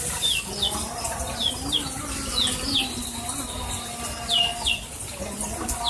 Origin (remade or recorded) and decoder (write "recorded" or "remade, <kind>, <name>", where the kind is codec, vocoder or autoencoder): recorded